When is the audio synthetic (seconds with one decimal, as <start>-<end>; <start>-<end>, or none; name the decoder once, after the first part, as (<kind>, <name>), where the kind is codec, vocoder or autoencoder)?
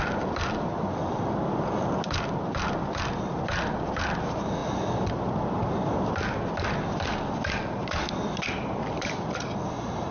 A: none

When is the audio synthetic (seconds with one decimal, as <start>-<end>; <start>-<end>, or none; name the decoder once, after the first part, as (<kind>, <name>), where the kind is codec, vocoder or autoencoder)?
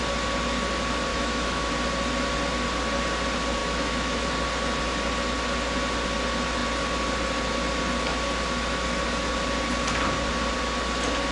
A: 1.1-1.7 (autoencoder, DAC-VAE); 3.6-4.3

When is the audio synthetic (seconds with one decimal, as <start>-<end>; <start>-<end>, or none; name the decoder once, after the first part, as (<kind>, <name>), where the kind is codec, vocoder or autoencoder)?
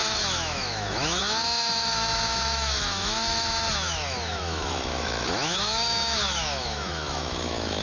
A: 0.0-7.8 (autoencoder, DAC-VAE)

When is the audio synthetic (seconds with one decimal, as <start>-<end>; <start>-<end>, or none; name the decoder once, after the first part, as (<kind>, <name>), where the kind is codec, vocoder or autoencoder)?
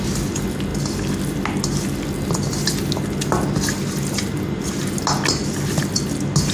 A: none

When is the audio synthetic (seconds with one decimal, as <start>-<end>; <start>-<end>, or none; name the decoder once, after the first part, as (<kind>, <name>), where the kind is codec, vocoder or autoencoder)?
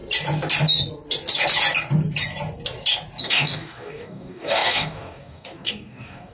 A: 3.2-6.3 (codec, DAC)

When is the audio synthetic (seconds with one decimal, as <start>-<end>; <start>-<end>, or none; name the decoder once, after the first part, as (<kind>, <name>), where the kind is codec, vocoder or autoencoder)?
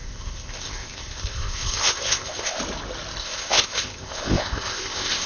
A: 0.0-2.6 (codec, ZipCodec); 3.2-5.3